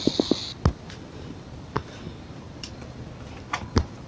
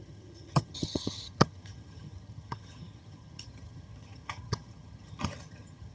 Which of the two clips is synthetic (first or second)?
second